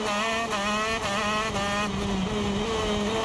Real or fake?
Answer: real